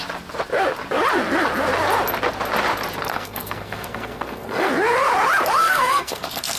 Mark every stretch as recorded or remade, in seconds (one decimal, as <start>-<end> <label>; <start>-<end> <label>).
0.0-3.1 recorded; 3.1-4.7 remade; 4.7-5.6 recorded; 5.6-6.6 remade